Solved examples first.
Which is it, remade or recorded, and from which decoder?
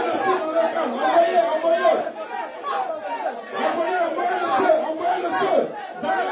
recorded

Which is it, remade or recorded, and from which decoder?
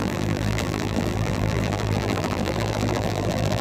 remade, vocoder, BigVGAN v2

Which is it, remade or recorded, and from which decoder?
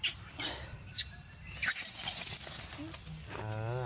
recorded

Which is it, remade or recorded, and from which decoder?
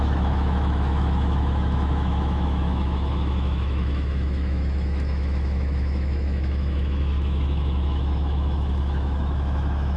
remade, autoencoder, DAC-VAE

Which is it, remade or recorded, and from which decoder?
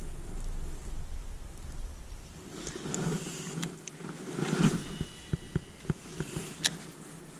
recorded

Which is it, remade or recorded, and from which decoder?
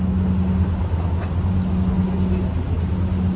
recorded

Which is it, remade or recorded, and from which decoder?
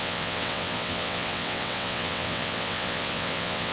remade, vocoder, WaveNeXt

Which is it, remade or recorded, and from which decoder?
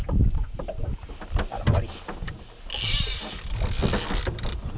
recorded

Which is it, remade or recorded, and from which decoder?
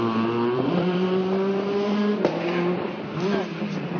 remade, vocoder, BigVGAN v2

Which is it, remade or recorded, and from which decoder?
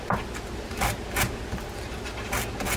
recorded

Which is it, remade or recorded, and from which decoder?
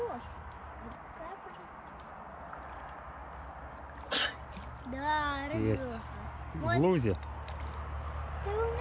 recorded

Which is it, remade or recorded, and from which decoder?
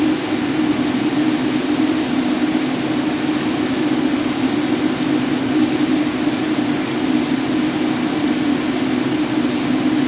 recorded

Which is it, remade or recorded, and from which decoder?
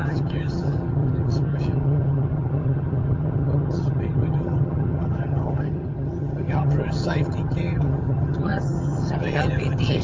remade, vocoder, HiFi-GAN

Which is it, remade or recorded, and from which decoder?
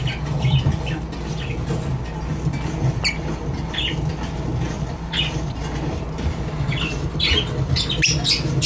recorded